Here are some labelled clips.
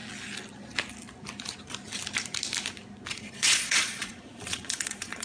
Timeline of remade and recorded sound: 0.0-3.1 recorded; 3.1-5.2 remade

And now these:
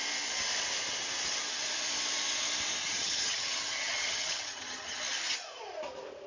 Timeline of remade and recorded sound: 0.0-2.8 recorded; 2.8-5.0 remade; 5.0-6.3 recorded

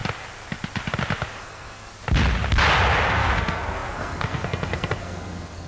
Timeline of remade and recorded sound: 0.0-1.4 recorded; 1.4-1.9 remade; 1.9-3.1 recorded; 3.1-5.7 remade

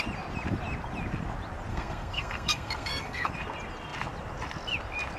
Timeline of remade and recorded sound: 0.0-1.7 recorded; 1.7-3.3 remade; 3.3-5.2 recorded

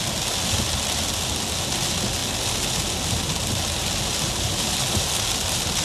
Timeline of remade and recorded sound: 0.0-5.8 recorded

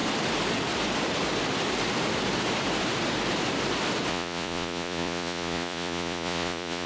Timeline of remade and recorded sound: 0.0-4.1 recorded; 4.1-6.9 remade

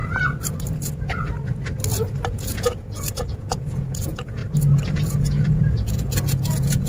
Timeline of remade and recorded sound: 0.0-2.3 recorded; 2.3-4.4 remade; 4.4-5.1 recorded; 5.1-6.9 remade

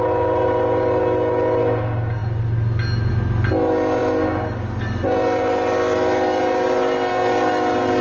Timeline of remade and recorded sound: 0.0-8.0 recorded